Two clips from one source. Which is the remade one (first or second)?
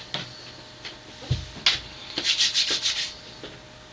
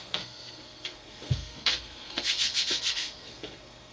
second